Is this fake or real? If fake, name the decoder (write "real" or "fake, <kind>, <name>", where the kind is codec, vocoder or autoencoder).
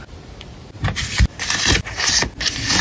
real